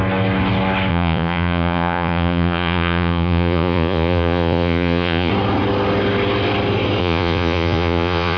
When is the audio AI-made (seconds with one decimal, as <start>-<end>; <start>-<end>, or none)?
0.9-5.3; 7.0-8.4